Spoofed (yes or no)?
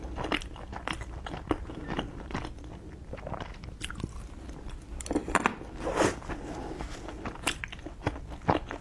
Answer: no